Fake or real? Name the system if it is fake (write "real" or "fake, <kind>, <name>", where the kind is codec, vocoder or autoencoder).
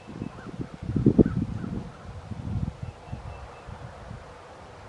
real